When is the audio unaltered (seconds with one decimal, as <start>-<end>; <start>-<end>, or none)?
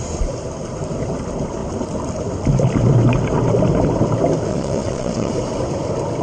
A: 0.0-4.5; 5.3-6.2